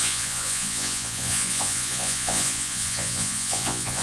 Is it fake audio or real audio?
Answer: fake